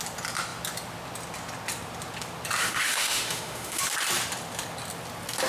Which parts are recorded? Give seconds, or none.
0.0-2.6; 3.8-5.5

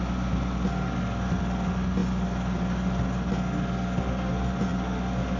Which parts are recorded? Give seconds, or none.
0.0-5.4